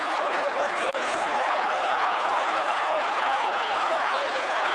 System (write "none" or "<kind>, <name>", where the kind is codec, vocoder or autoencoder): codec, HILCodec